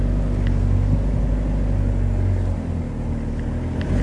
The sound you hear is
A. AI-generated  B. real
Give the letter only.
B